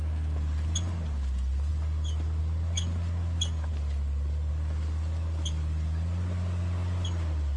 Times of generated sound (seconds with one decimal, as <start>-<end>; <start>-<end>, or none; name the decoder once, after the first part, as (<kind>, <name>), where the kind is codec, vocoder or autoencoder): none